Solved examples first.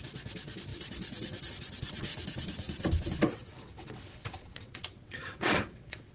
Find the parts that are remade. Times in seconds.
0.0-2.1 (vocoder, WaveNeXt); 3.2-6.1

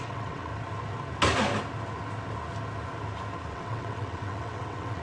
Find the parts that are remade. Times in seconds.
0.0-0.5 (vocoder, WaveNeXt); 3.5-5.0

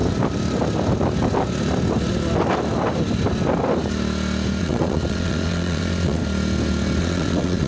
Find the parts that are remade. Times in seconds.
4.6-6.2 (vocoder, WaveNeXt); 7.0-7.7

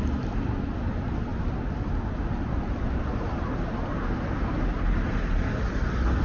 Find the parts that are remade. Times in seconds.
none

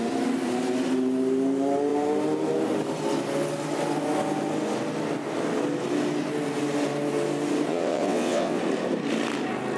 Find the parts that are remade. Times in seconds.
7.7-8.6 (vocoder, WaveNeXt)

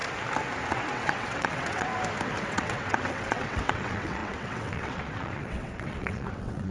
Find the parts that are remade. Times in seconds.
0.7-1.9 (vocoder, WaveNeXt); 2.4-6.7

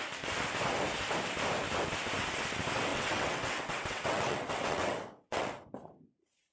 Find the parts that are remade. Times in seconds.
2.9-5.5 (vocoder, WaveNeXt)

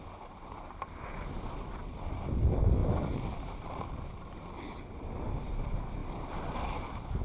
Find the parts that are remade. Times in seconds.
none